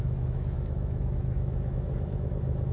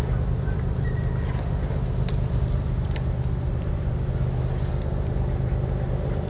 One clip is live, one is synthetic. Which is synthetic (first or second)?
first